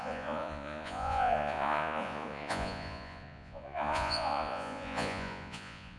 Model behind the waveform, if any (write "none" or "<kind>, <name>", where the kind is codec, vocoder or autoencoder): vocoder, Vocos